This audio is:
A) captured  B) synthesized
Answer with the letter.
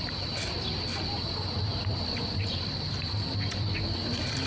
B